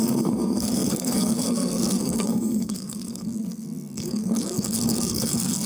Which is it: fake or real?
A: fake